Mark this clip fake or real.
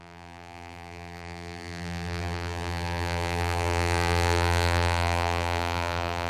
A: fake